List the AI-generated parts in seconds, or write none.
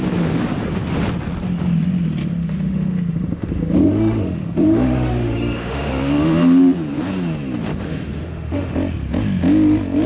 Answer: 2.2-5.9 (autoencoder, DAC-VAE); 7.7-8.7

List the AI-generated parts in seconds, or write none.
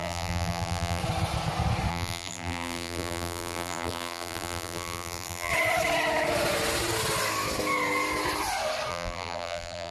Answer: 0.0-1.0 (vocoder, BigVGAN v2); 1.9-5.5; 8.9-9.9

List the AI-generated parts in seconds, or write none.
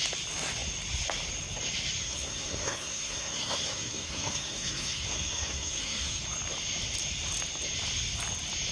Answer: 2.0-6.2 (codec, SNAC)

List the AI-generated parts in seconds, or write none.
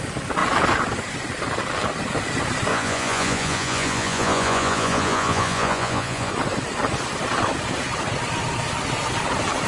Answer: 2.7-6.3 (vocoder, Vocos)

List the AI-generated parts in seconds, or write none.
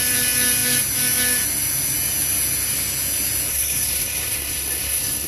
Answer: 3.5-5.3 (codec, SNAC)